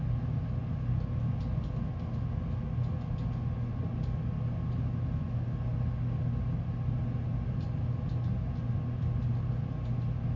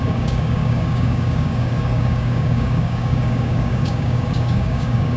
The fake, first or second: second